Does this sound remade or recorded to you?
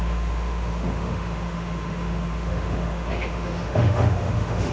remade